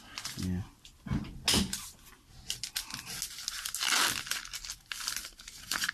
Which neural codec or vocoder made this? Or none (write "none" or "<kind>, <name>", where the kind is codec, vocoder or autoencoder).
none